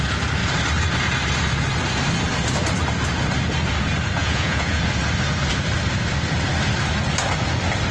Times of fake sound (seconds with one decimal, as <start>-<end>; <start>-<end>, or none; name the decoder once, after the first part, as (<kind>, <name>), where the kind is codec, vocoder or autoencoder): 4.2-4.8 (vocoder, Vocos)